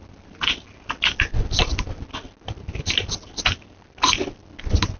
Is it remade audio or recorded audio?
recorded